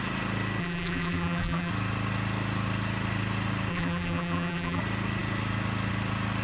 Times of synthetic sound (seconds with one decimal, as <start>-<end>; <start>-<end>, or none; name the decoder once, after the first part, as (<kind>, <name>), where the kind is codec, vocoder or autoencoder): 0.6-1.7 (vocoder, BigVGAN v2); 3.7-4.8